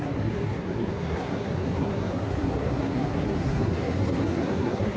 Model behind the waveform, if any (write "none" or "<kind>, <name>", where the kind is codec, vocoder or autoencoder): codec, SNAC